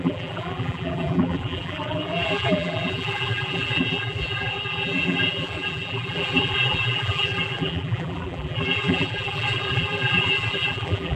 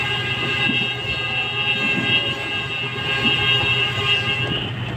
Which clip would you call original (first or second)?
second